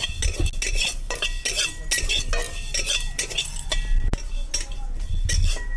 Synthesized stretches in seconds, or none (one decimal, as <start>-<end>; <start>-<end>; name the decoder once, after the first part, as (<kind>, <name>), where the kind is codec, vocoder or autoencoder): none